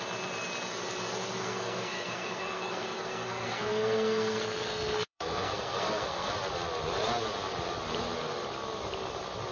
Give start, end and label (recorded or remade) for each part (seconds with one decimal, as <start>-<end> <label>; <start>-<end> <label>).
0.0-1.4 recorded; 1.4-6.3 remade; 6.3-9.5 recorded